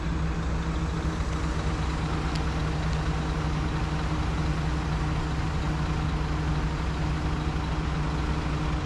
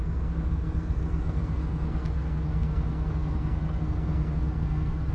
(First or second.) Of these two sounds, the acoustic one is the first